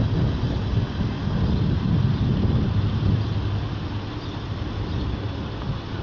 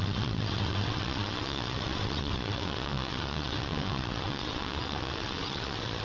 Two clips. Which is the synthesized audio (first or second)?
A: second